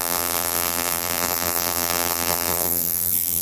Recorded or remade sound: remade